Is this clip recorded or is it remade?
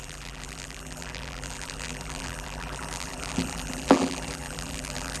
remade